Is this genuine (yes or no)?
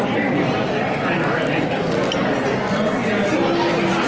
yes